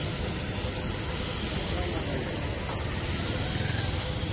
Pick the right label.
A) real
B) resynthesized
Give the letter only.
A